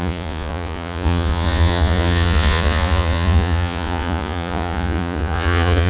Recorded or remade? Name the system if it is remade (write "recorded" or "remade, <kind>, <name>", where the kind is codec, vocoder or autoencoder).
remade, vocoder, Vocos